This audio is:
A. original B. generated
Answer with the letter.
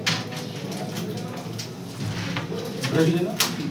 A